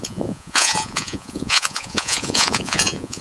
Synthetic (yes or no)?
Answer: yes